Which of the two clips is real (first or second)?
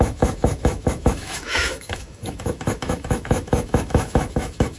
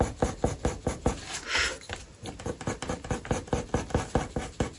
second